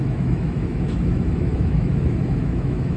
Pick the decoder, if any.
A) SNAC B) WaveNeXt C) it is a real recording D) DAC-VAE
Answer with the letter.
D